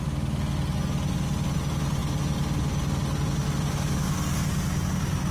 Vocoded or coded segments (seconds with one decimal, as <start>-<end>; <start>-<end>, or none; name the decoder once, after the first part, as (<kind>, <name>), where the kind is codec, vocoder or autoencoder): none